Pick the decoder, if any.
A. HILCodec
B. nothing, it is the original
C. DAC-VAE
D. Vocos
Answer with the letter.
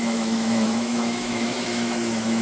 C